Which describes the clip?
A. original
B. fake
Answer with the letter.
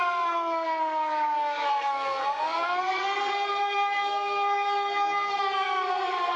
B